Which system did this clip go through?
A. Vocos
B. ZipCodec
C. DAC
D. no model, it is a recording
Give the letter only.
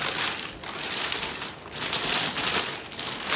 D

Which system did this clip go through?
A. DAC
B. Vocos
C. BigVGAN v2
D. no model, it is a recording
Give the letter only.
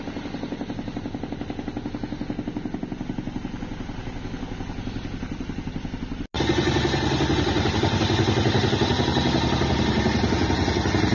D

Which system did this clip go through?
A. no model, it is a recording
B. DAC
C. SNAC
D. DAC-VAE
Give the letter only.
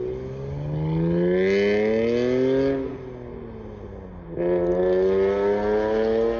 A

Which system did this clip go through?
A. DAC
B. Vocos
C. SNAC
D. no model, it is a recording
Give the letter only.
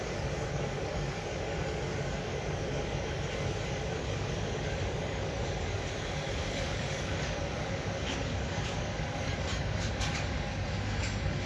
A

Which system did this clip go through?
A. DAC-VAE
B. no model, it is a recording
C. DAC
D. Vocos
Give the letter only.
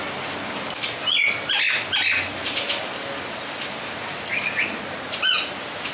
B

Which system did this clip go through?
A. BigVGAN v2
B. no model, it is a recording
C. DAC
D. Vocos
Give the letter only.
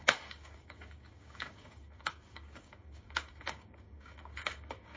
C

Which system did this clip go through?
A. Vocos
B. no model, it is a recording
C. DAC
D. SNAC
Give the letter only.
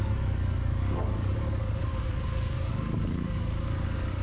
C